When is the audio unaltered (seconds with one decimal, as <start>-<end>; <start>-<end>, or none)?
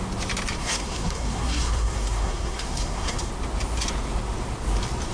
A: 0.0-0.6; 3.3-5.1